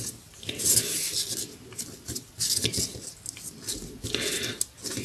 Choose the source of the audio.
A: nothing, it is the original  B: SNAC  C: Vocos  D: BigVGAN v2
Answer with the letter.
A